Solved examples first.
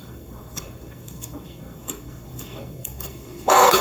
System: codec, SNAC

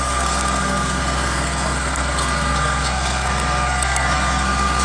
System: codec, SNAC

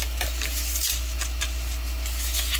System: none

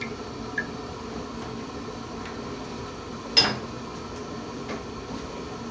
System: none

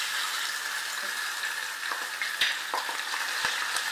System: none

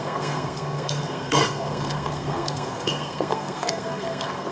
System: codec, SNAC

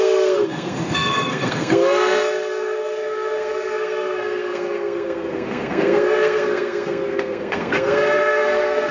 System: codec, SNAC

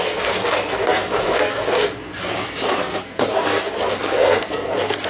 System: codec, SNAC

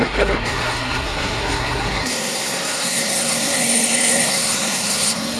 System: codec, SNAC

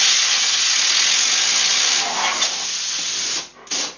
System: none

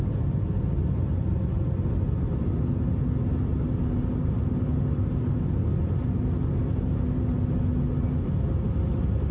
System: none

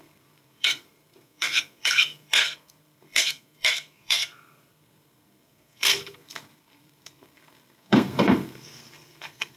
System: codec, SNAC